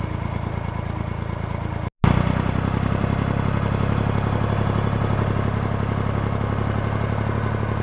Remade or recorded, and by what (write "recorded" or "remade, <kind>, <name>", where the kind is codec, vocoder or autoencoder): recorded